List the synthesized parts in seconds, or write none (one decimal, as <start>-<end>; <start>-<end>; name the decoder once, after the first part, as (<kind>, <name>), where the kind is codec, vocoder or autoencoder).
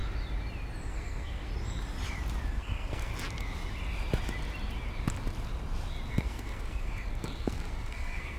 0.9-1.5 (codec, SNAC); 2.5-3.1; 6.1-8.4